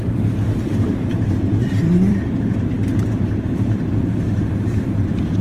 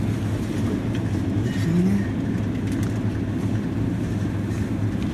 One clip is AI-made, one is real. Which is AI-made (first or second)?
first